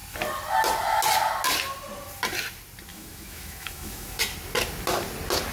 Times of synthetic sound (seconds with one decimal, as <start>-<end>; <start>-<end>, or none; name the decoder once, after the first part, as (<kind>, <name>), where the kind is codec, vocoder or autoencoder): 2.9-4.2 (autoencoder, DAC-VAE)